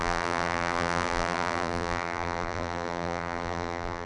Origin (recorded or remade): remade